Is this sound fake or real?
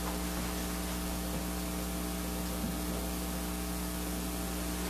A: real